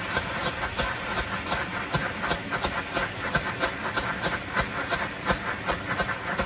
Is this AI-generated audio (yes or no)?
no